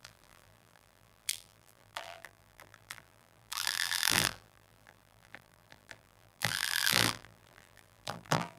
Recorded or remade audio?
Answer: remade